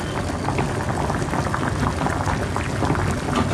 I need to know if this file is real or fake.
real